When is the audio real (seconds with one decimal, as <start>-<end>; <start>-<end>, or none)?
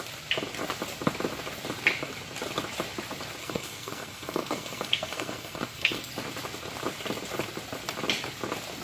0.0-3.4; 6.1-8.8